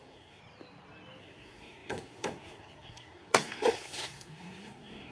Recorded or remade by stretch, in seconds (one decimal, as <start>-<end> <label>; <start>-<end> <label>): 0.0-0.4 remade; 0.4-1.2 recorded; 1.2-5.1 remade